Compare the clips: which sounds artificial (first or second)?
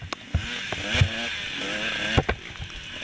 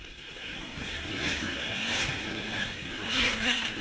second